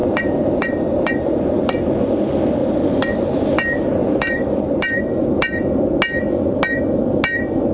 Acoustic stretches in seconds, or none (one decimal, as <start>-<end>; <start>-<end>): 1.5-2.6; 3.2-4.0; 5.6-7.7